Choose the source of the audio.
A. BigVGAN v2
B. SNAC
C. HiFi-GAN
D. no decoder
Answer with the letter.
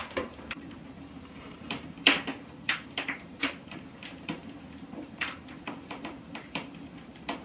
A